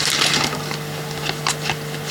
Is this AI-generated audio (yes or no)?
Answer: no